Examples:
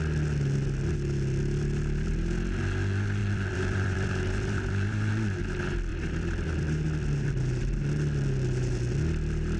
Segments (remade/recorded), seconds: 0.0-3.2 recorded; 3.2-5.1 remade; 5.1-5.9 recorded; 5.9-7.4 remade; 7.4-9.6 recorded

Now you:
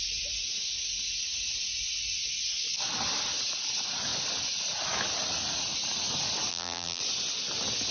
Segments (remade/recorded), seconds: 0.0-6.5 recorded; 6.5-7.0 remade; 7.0-7.9 recorded

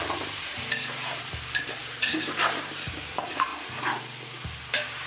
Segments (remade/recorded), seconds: 0.0-3.5 remade; 3.5-4.6 recorded; 4.6-5.1 remade

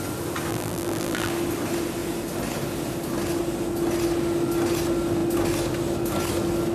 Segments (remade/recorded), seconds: 0.0-0.5 recorded; 0.5-1.3 remade; 1.3-6.7 recorded

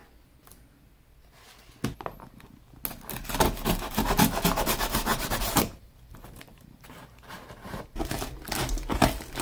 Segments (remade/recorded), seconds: 0.0-5.1 recorded; 5.1-8.0 remade; 8.0-9.4 recorded

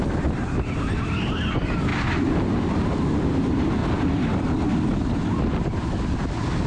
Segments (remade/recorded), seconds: 0.0-1.9 remade; 1.9-3.1 recorded; 3.1-3.8 remade; 3.8-6.7 recorded

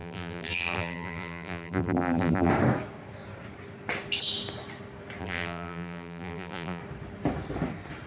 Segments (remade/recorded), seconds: 0.0-2.5 remade; 2.5-5.2 recorded; 5.2-6.8 remade; 6.8-8.1 recorded